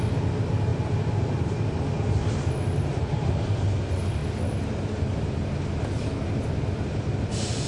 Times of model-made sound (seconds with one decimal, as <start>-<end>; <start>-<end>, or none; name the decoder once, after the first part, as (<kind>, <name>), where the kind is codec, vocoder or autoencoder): none